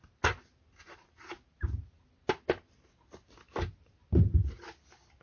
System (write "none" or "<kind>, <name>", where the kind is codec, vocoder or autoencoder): none